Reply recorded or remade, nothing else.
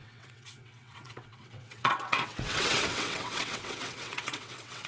remade